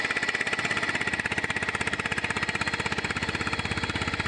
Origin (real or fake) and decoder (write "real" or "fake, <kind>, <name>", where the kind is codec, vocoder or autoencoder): real